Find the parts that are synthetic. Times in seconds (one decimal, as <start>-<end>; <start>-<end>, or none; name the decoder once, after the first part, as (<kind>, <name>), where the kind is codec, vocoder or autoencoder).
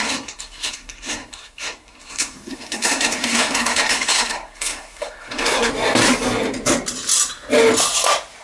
0.0-5.7 (codec, SNAC)